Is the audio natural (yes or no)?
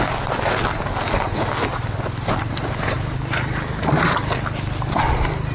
yes